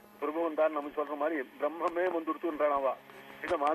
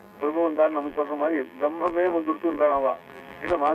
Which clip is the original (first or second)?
first